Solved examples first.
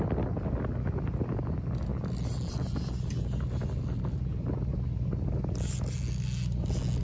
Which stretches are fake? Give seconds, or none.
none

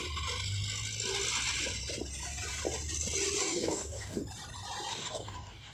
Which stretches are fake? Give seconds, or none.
3.4-4.2 (codec, DAC); 4.9-5.7

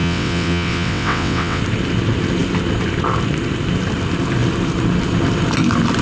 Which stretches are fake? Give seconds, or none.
0.0-1.6 (vocoder, WaveNeXt)

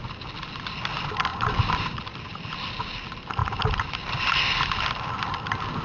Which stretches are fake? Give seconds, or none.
1.3-2.0 (vocoder, BigVGAN v2)

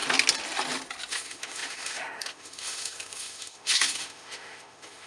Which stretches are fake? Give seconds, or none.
1.1-5.1 (autoencoder, DAC-VAE)